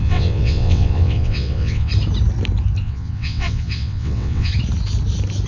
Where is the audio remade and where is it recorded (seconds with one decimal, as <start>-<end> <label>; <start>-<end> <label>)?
0.0-1.9 remade; 1.9-2.8 recorded; 2.8-4.5 remade; 4.5-5.5 recorded